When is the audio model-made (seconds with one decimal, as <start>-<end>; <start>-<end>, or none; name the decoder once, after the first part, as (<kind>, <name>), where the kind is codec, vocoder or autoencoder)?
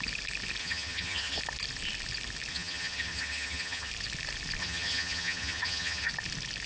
0.6-1.4 (vocoder, HiFi-GAN); 2.5-3.9; 4.6-6.1